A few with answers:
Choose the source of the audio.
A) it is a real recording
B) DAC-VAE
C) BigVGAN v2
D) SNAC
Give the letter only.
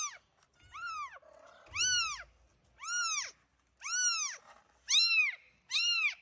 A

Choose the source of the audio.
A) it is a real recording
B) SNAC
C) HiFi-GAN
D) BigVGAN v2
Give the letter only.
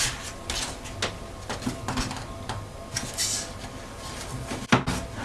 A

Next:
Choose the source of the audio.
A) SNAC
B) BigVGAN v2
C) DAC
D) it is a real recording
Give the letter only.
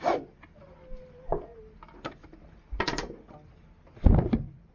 D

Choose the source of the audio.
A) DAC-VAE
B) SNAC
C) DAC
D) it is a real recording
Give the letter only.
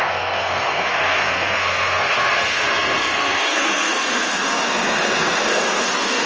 B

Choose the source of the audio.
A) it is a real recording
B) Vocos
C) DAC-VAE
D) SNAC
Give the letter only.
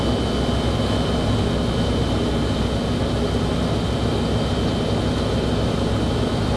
A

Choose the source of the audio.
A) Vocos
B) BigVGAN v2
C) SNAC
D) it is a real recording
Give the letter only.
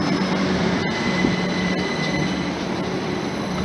D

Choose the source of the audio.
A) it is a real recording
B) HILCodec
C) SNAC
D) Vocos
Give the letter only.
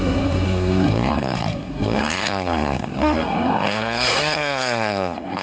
C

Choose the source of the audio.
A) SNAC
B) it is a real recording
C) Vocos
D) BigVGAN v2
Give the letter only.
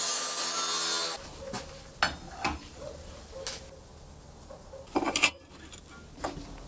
B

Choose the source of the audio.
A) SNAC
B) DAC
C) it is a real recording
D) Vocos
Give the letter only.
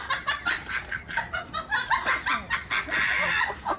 C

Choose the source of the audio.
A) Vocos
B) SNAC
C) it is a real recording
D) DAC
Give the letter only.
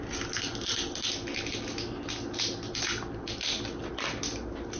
C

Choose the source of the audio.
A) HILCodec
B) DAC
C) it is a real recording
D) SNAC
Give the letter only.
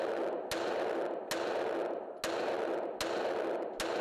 C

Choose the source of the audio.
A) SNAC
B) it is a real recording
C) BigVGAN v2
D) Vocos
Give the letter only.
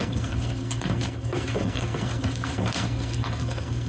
A